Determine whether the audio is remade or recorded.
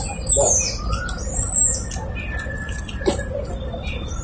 recorded